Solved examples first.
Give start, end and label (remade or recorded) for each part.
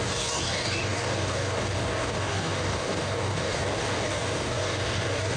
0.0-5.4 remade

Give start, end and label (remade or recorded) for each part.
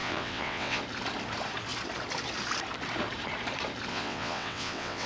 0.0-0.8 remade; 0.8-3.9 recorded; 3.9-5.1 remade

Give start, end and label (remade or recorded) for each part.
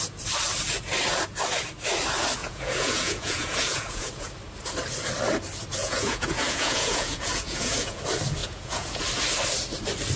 0.0-2.4 recorded; 2.4-4.3 remade; 4.3-5.8 recorded; 5.8-8.0 remade; 8.0-8.4 recorded; 8.4-9.0 remade; 9.0-10.2 recorded